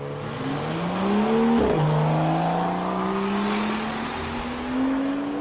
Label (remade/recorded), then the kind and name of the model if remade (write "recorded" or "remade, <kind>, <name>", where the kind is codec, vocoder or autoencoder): recorded